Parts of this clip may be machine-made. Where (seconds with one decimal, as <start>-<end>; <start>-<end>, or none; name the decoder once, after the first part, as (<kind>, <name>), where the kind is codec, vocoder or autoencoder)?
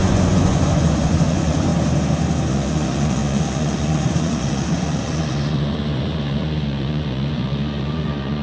0.0-1.7 (vocoder, Vocos); 2.5-8.4